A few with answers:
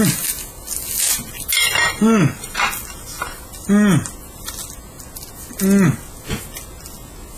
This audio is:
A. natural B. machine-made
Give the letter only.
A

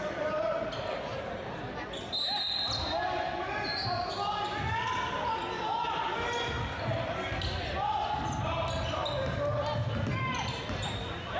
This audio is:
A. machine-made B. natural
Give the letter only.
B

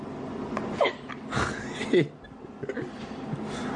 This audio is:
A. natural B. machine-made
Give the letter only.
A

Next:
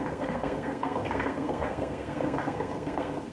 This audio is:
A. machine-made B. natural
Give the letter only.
A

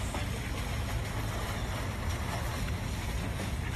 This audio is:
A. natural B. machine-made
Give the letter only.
A